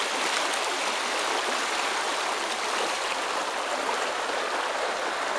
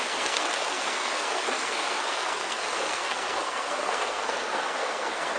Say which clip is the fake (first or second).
second